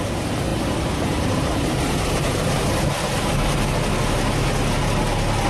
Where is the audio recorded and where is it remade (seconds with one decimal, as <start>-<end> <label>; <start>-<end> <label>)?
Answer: 0.0-0.5 recorded; 0.5-2.8 remade; 2.8-5.5 recorded